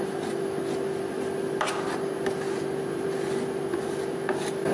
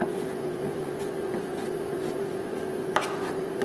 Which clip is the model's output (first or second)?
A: second